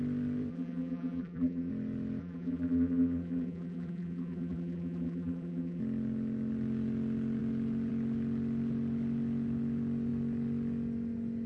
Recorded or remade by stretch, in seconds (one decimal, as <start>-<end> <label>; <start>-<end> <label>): 0.0-0.5 recorded; 0.5-1.7 remade; 1.7-2.2 recorded; 2.2-5.8 remade; 5.8-11.5 recorded